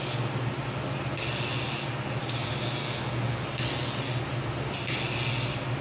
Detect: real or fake real